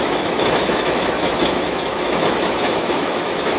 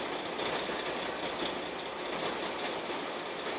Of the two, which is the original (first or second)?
second